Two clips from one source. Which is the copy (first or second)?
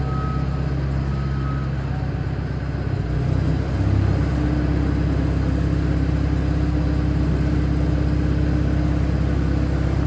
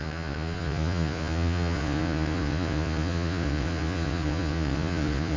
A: second